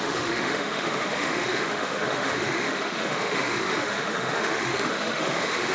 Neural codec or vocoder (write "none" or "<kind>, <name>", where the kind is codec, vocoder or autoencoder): autoencoder, DAC-VAE